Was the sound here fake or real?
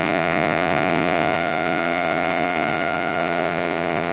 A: fake